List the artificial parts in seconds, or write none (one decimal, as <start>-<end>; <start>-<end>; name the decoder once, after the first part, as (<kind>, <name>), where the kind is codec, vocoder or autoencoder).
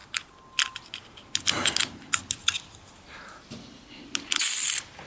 none